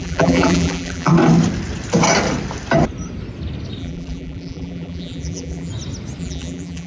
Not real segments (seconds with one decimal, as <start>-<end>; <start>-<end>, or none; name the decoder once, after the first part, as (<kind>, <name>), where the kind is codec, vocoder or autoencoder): 0.0-1.1 (vocoder, BigVGAN v2); 3.8-5.7; 6.2-6.9